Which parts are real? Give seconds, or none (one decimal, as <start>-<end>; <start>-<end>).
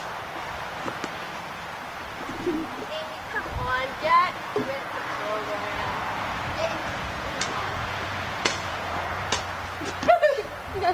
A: 0.0-6.8; 9.4-10.9